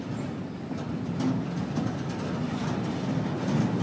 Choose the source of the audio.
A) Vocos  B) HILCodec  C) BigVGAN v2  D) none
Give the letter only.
D